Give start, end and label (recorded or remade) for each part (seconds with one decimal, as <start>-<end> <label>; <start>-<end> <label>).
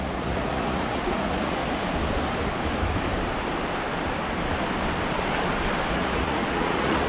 0.0-1.6 remade; 1.6-5.9 recorded; 5.9-7.1 remade